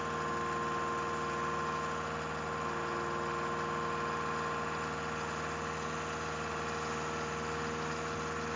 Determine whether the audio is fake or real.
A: real